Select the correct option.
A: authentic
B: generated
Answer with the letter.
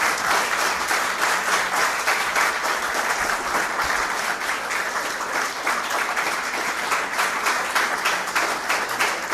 A